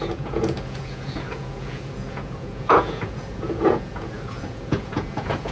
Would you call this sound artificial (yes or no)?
yes